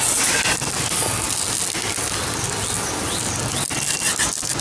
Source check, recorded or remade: recorded